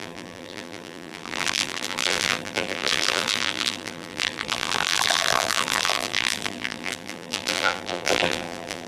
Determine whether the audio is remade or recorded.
remade